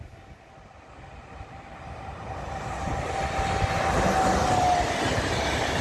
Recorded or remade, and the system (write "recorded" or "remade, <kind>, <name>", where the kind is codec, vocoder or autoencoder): recorded